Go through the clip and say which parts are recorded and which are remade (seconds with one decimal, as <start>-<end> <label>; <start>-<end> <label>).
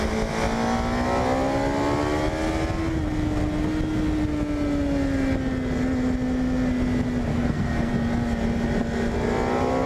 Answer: 0.0-7.3 recorded; 7.3-7.9 remade; 7.9-9.9 recorded